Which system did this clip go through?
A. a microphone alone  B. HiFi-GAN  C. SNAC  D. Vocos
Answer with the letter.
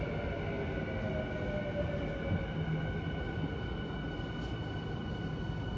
A